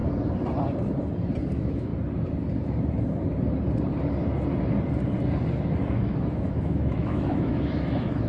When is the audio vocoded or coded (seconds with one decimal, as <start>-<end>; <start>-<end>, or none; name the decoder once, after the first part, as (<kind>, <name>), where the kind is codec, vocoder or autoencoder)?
1.5-1.9 (autoencoder, DAC-VAE); 5.9-8.3

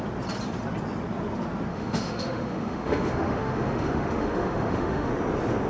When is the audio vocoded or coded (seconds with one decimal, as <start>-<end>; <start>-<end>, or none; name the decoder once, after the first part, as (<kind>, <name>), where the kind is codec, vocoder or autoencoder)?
1.7-5.1 (autoencoder, DAC-VAE)

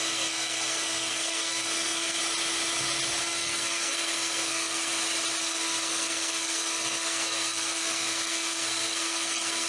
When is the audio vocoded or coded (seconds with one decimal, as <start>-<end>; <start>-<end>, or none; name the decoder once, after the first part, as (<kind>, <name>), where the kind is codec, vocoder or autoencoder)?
0.0-2.2 (codec, SNAC); 3.2-4.9; 5.4-9.7

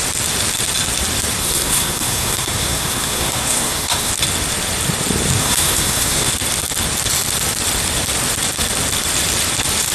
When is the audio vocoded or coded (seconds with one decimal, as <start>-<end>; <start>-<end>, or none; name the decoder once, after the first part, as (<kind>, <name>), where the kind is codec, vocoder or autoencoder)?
1.4-4.1 (codec, SNAC); 5.4-6.3

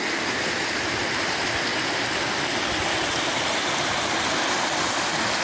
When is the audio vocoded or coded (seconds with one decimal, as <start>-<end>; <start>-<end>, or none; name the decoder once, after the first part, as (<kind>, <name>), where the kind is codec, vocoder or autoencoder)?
none

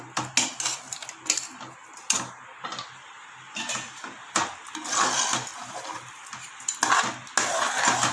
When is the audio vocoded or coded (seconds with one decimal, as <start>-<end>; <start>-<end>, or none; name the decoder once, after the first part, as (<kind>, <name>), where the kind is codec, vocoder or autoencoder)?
5.5-6.6 (vocoder, BigVGAN v2)